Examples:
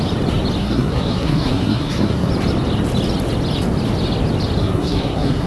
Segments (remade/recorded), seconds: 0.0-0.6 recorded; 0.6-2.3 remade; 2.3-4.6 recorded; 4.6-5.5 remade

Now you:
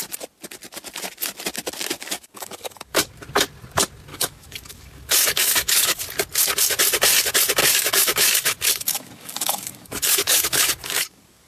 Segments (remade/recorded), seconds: 0.0-2.1 recorded; 2.1-3.1 remade; 3.1-4.1 recorded; 4.1-6.0 remade; 6.0-7.6 recorded; 7.6-11.5 remade

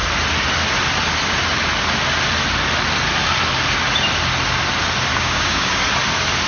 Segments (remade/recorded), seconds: 0.0-5.1 recorded; 5.1-5.8 remade; 5.8-6.5 recorded

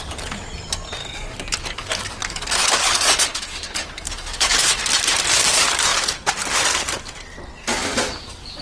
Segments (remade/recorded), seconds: 0.0-1.0 recorded; 1.0-4.8 remade; 4.8-7.6 recorded; 7.6-8.6 remade

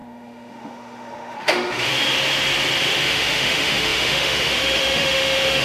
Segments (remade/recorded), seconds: 0.0-1.9 remade; 1.9-2.8 recorded; 2.8-5.6 remade

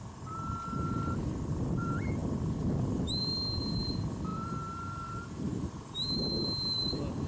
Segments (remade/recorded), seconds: 0.0-7.3 recorded